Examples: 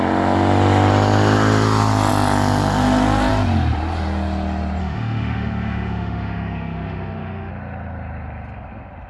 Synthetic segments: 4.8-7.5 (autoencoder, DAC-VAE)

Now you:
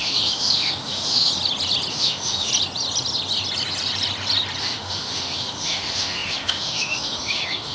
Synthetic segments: 0.0-1.3 (autoencoder, DAC-VAE); 1.9-2.5; 4.6-7.7

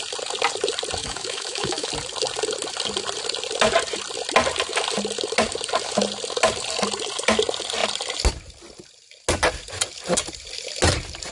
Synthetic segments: 1.0-1.9 (autoencoder, DAC-VAE)

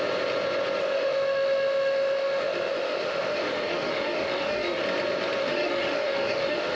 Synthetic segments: 0.8-4.8 (autoencoder, DAC-VAE); 5.4-6.8

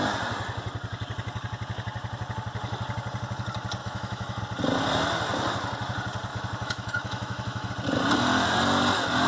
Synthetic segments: 3.8-4.4 (autoencoder, DAC-VAE); 6.3-7.7

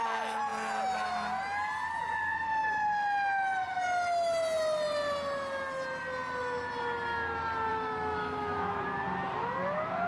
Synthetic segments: 7.7-8.8 (autoencoder, DAC-VAE)

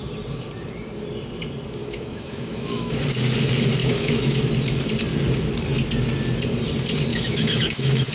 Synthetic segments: 1.8-2.9 (autoencoder, DAC-VAE); 3.8-4.4; 7.1-8.1

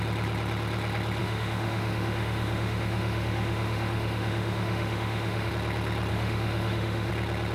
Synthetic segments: 1.2-5.5 (autoencoder, DAC-VAE); 6.1-7.1